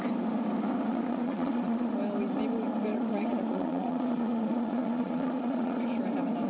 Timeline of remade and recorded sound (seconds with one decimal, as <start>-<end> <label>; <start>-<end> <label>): 0.0-0.9 recorded; 0.9-1.9 remade; 1.9-2.9 recorded; 2.9-6.0 remade; 6.0-6.5 recorded